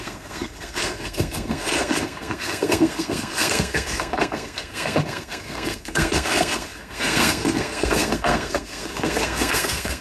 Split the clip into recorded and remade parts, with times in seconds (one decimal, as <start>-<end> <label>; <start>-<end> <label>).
0.0-10.0 remade